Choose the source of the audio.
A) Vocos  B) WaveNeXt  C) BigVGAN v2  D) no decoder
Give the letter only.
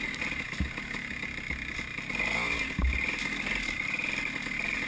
D